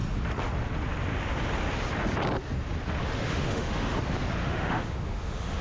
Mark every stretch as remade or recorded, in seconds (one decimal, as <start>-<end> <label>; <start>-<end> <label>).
0.0-3.0 recorded; 3.0-4.0 remade; 4.0-4.4 recorded; 4.4-5.6 remade